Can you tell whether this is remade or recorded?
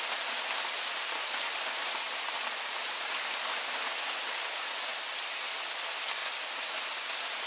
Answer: recorded